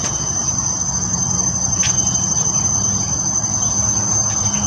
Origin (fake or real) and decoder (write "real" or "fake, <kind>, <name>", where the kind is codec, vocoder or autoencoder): fake, vocoder, BigVGAN v2